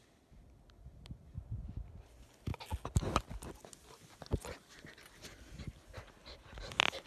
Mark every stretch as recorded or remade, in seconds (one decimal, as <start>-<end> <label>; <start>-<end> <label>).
0.0-7.1 recorded

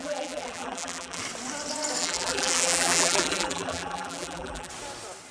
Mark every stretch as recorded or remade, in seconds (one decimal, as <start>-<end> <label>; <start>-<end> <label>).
0.0-1.2 remade; 1.2-2.0 recorded; 2.0-4.7 remade; 4.7-5.3 recorded

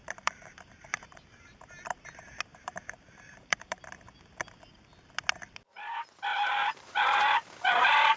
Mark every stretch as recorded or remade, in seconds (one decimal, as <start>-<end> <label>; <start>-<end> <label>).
0.0-1.7 remade; 1.7-2.5 recorded; 2.5-3.8 remade; 3.8-6.3 recorded; 6.3-8.2 remade

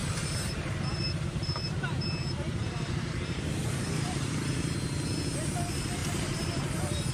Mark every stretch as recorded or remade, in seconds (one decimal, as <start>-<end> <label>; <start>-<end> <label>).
0.0-4.3 remade; 4.3-6.0 recorded; 6.0-7.1 remade

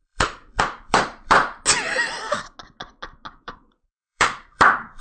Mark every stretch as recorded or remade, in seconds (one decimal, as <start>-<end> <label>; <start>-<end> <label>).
0.0-1.4 remade; 1.4-3.3 recorded; 3.3-5.0 remade

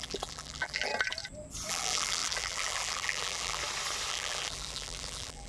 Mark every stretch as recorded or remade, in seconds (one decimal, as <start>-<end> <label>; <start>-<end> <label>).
0.0-0.9 remade; 0.9-1.7 recorded; 1.7-3.6 remade; 3.6-4.1 recorded; 4.1-5.5 remade

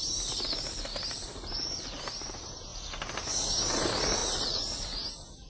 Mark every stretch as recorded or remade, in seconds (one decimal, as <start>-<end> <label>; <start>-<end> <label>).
0.0-0.9 recorded; 0.9-2.0 remade; 2.0-5.5 recorded

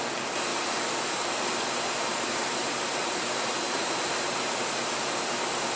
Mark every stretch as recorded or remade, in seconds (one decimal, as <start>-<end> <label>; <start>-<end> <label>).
0.0-0.5 recorded; 0.5-1.6 remade; 1.6-2.1 recorded; 2.1-5.0 remade; 5.0-5.8 recorded